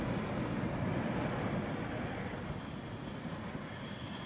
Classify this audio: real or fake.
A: real